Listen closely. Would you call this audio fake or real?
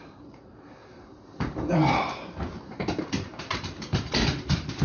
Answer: fake